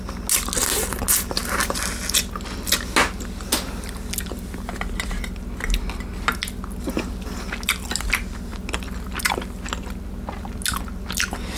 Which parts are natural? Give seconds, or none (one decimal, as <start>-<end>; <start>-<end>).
0.0-11.6